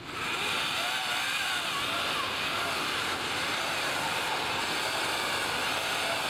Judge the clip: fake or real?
real